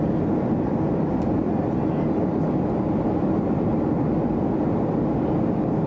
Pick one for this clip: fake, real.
real